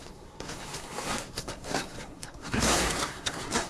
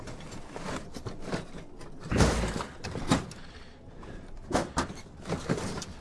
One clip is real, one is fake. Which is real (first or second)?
second